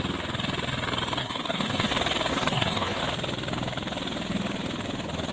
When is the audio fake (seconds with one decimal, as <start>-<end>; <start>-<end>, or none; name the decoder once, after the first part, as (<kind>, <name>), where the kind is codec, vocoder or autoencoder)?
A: 1.2-1.9 (codec, SNAC); 2.3-3.0